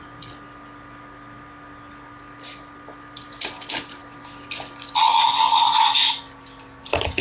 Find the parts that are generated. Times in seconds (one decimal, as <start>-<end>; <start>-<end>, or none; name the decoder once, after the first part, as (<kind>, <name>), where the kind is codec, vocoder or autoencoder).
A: none